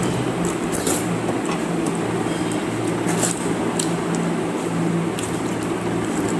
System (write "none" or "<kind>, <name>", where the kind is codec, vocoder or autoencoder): vocoder, BigVGAN v2